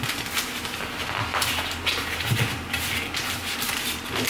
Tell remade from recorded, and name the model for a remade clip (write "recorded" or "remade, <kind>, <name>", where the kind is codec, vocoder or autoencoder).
recorded